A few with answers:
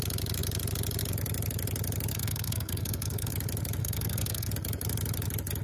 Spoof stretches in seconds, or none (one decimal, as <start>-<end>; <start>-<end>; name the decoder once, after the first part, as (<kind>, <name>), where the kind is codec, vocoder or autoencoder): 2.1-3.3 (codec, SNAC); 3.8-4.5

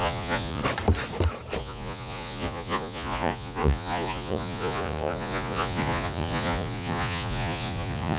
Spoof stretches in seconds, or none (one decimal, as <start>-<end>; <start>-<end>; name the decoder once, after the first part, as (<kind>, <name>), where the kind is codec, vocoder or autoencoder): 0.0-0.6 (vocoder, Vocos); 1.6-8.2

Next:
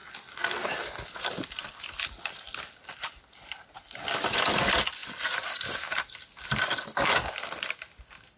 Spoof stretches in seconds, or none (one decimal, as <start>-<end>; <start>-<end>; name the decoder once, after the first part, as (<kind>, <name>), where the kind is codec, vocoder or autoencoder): none

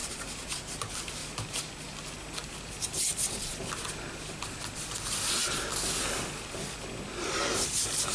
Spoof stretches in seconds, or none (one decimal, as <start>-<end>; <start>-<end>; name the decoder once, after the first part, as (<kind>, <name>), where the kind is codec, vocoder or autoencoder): 0.0-0.5 (vocoder, BigVGAN v2)

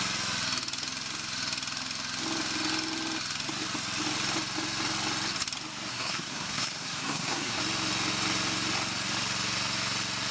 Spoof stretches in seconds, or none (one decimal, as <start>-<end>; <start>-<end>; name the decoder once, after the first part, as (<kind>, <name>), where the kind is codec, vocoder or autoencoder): 5.9-7.6 (codec, SNAC)